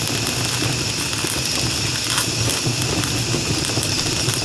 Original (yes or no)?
yes